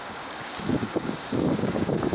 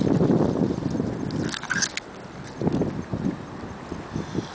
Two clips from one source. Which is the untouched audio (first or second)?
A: second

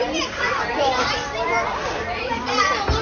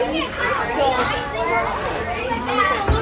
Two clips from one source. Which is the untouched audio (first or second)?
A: second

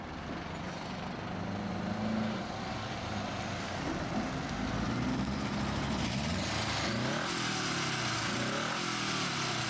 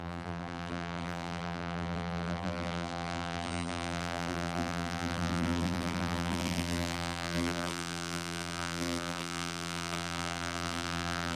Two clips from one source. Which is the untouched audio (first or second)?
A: first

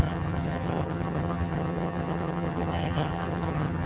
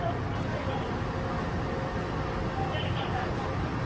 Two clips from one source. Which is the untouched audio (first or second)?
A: second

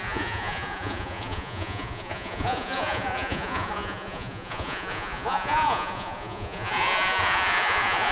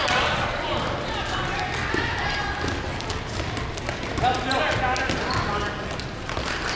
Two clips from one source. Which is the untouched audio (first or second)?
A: second